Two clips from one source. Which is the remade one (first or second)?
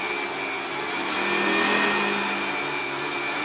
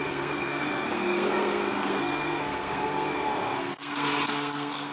second